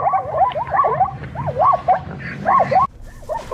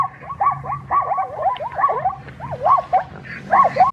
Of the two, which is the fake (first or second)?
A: first